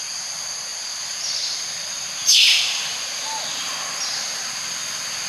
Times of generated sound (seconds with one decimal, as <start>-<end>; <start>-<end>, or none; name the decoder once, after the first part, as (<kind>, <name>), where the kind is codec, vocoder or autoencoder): 0.7-1.6 (vocoder, BigVGAN v2)